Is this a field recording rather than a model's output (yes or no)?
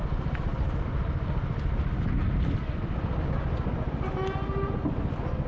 yes